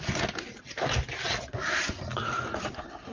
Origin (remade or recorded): recorded